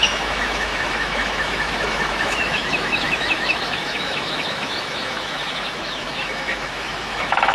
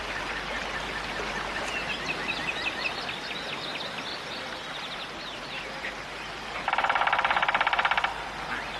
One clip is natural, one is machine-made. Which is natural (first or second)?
second